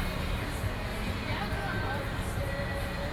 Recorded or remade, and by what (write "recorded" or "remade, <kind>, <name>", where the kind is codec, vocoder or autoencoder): recorded